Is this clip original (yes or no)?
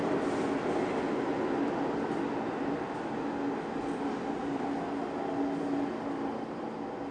yes